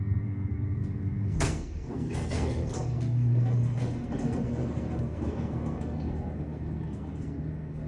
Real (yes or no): no